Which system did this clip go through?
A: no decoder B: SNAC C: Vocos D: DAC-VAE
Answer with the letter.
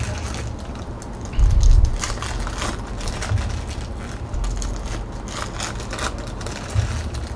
A